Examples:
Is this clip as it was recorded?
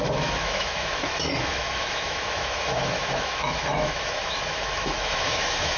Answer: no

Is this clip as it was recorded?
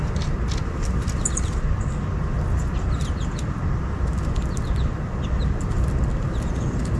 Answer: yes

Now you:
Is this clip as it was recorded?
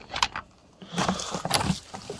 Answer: yes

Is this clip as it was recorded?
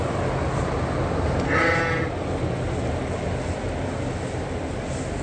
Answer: yes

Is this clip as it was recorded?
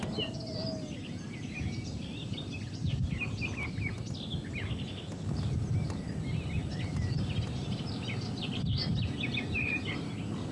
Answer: yes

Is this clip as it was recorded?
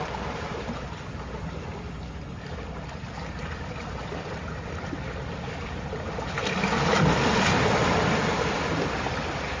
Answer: yes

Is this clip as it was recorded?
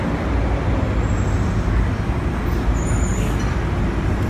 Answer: yes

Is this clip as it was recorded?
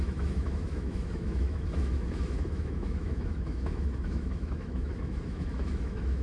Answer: no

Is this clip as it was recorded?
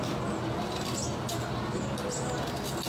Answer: yes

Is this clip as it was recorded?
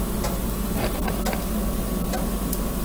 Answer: yes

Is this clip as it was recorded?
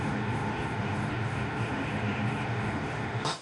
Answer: no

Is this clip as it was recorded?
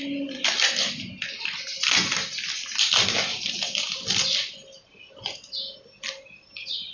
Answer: yes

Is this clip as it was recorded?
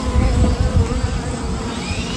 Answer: yes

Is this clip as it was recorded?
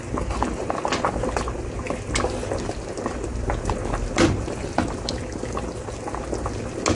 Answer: yes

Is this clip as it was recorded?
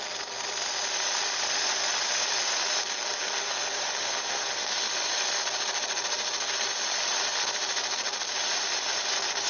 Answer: yes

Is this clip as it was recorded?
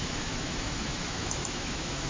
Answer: no